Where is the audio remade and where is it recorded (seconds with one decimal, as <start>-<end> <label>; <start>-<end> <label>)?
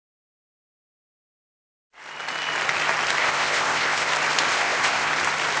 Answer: 0.0-3.2 recorded; 3.2-4.1 remade; 4.1-4.5 recorded; 4.5-5.1 remade; 5.1-5.6 recorded